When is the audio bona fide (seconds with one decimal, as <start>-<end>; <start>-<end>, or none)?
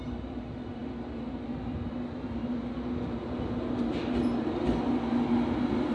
0.0-5.9